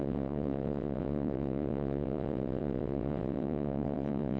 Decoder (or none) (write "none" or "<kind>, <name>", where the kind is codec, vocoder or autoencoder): vocoder, WaveNeXt